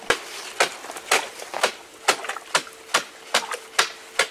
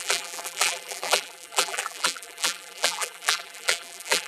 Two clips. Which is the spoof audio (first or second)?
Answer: second